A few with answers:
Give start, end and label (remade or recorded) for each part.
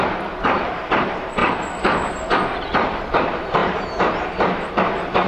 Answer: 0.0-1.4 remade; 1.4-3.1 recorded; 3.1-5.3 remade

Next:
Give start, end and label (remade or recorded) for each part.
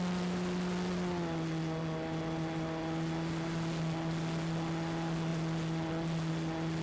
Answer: 0.0-6.8 recorded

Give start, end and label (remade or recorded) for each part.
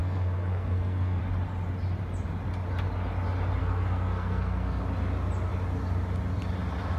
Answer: 0.0-1.2 remade; 1.2-3.6 recorded; 3.6-4.8 remade; 4.8-7.0 recorded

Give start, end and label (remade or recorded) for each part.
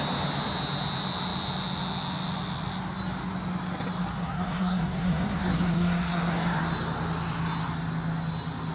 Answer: 0.0-4.1 recorded; 4.1-6.6 remade; 6.6-8.7 recorded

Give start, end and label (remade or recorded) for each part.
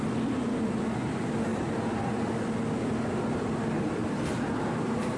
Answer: 0.0-1.5 recorded; 1.5-2.2 remade; 2.2-4.0 recorded; 4.0-5.2 remade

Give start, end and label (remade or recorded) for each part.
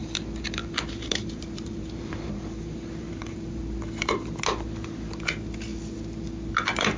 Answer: 0.0-3.6 remade; 3.6-7.0 recorded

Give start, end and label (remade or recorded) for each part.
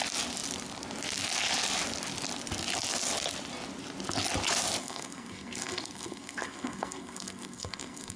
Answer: 0.0-4.8 recorded; 4.8-8.2 remade